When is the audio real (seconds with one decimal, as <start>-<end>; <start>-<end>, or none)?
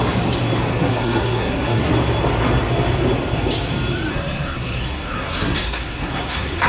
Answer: 0.0-0.7; 1.9-4.1